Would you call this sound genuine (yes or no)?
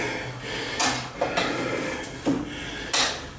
yes